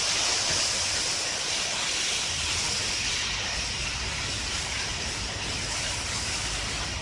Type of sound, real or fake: real